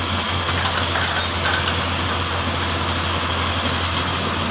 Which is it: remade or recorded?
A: recorded